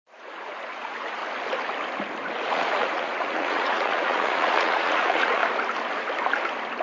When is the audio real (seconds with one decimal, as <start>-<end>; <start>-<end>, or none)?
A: 1.2-2.5; 5.4-6.8